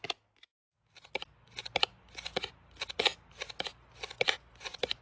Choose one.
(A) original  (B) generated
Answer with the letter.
A